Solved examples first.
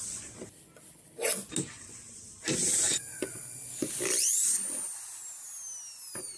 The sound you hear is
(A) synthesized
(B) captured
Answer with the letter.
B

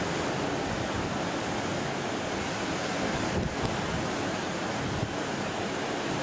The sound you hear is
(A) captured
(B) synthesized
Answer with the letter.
A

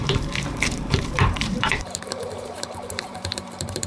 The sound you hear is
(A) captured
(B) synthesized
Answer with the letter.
B